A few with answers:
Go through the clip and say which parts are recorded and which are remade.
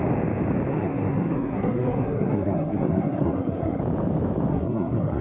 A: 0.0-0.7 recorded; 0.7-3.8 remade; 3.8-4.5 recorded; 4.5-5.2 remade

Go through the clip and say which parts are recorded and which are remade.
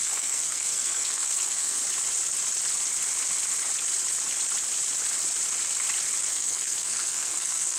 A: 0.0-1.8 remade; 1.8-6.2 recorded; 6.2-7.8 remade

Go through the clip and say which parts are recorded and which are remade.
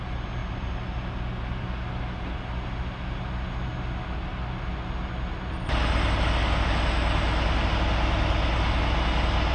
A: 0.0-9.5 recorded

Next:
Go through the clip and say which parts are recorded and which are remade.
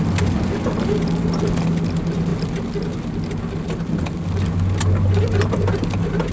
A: 0.0-6.3 recorded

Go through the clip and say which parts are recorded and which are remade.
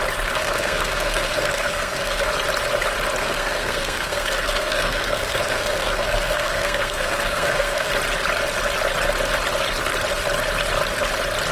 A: 0.0-0.4 recorded; 0.4-2.3 remade; 2.3-3.2 recorded; 3.2-7.9 remade; 7.9-11.5 recorded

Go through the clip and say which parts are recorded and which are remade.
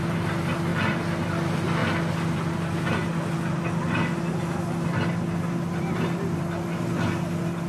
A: 0.0-7.7 recorded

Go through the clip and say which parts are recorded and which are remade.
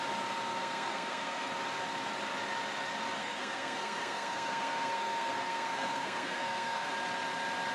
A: 0.0-0.5 recorded; 0.5-1.5 remade; 1.5-3.2 recorded; 3.2-6.9 remade; 6.9-7.7 recorded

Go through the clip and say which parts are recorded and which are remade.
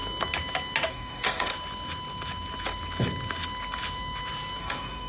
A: 0.0-0.9 recorded; 0.9-1.5 remade; 1.5-4.6 recorded; 4.6-5.1 remade